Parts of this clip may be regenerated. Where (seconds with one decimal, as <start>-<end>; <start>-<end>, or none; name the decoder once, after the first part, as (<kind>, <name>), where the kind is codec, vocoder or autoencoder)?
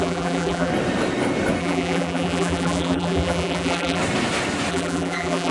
0.0-0.7 (vocoder, BigVGAN v2); 1.6-4.0; 4.7-5.5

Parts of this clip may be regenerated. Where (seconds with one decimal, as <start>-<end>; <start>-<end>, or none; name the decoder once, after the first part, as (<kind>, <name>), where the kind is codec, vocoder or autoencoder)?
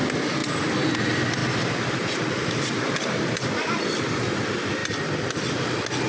0.4-0.9 (vocoder, BigVGAN v2); 1.4-4.0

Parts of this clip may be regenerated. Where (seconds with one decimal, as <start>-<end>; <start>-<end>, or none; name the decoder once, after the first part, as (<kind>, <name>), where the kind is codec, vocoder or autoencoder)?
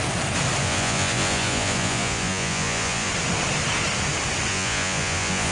0.6-3.1 (vocoder, Vocos); 4.5-5.5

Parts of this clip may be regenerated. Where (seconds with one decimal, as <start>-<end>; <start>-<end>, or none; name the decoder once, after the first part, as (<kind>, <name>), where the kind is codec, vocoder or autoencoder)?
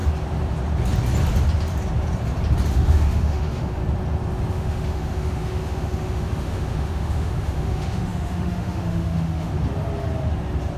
2.7-3.8 (autoencoder, DAC-VAE); 4.5-9.5